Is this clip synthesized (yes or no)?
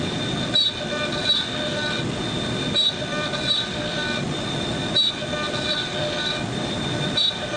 no